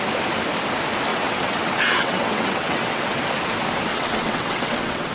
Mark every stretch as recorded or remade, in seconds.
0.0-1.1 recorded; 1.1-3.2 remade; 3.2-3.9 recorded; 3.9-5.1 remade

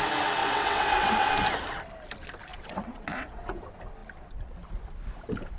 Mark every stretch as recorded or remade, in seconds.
0.0-0.4 recorded; 0.4-1.3 remade; 1.3-2.5 recorded; 2.5-3.6 remade; 3.6-5.6 recorded